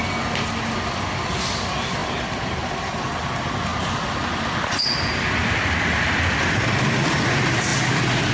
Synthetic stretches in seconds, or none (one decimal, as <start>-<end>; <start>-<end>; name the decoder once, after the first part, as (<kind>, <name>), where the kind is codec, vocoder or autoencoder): none